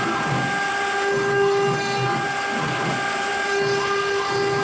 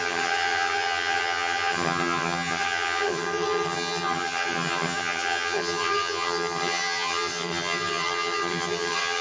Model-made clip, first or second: second